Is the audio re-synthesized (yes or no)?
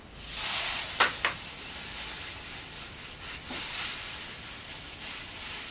no